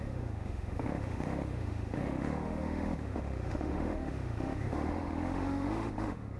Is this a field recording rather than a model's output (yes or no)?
no